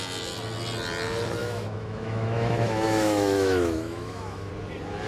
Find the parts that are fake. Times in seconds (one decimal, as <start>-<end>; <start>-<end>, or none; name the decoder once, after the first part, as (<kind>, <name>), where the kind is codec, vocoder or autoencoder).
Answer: 1.4-4.5 (autoencoder, DAC-VAE)